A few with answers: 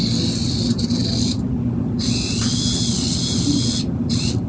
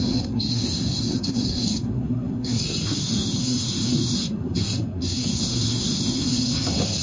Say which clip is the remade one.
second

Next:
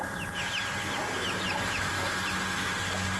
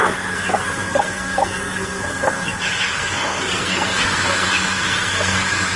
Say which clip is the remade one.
second